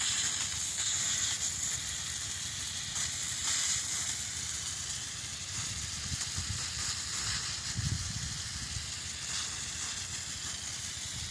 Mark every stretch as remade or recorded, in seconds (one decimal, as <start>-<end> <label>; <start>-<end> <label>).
0.0-11.3 recorded